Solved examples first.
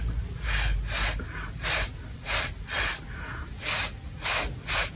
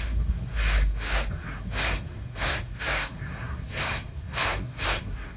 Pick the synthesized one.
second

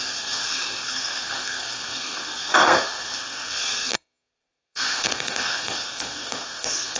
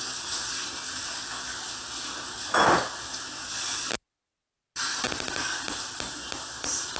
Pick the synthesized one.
first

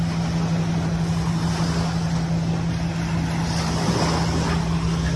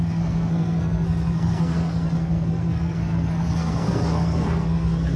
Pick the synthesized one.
second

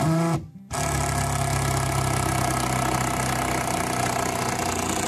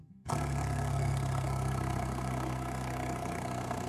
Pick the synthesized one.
second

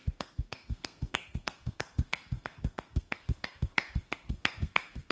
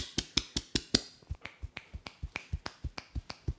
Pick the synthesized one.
first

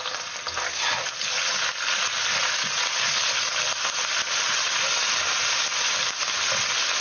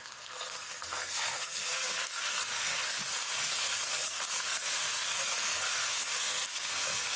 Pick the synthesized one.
second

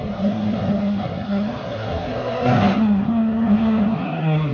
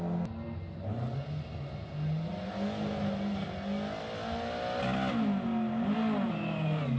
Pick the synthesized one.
first